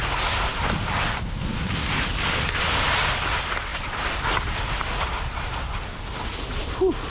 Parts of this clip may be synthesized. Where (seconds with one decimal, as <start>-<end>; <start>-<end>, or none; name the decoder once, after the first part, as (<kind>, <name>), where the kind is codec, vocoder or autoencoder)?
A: none